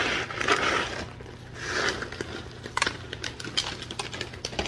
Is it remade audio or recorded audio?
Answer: recorded